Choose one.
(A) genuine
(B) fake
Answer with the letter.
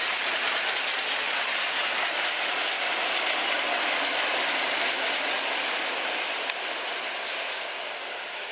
A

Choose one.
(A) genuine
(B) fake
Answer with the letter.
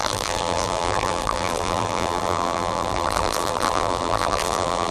B